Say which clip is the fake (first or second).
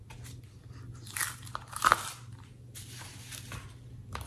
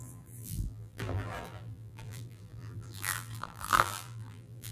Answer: second